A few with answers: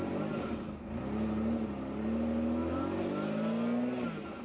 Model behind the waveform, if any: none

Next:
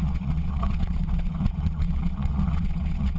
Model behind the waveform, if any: vocoder, WaveNeXt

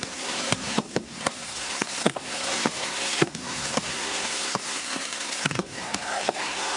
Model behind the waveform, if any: codec, SNAC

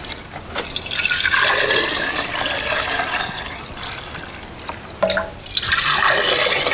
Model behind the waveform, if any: none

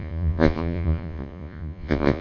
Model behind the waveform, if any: vocoder, Vocos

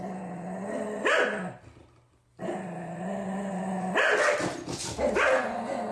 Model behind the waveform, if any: none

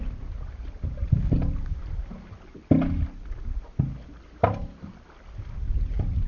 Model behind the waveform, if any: none